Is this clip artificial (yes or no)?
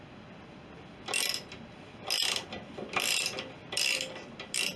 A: no